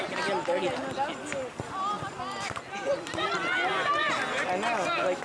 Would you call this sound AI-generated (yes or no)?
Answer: no